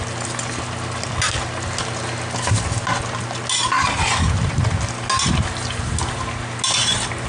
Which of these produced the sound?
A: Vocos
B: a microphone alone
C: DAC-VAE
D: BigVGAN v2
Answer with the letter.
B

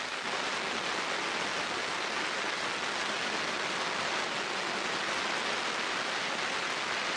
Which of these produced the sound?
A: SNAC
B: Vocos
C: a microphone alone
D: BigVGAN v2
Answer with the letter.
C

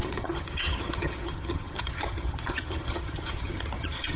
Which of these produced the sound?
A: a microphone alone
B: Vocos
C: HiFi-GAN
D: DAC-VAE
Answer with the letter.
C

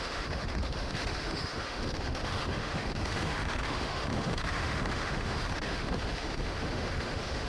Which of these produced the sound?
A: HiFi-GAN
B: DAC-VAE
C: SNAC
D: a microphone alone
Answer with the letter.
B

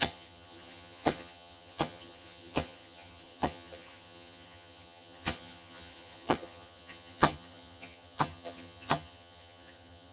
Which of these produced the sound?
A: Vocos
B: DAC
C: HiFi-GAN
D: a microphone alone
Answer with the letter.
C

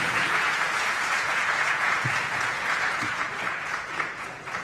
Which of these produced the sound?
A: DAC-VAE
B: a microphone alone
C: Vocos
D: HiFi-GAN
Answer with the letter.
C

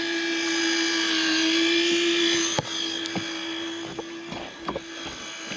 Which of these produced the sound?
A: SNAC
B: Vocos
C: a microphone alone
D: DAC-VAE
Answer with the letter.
C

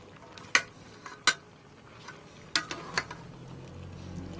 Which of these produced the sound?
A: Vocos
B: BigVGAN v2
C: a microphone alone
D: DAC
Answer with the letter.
C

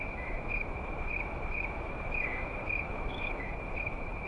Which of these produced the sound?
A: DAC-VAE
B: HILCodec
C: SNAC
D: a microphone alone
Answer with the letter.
A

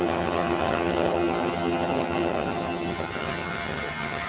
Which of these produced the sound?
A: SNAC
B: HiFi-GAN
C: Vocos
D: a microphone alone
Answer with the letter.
B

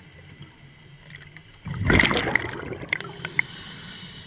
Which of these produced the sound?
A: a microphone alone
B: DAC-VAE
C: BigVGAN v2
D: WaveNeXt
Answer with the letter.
A